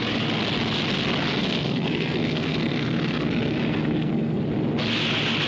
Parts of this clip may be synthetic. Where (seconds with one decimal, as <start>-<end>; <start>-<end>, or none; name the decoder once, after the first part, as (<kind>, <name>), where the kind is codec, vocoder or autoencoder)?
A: 1.4-4.4 (codec, SNAC)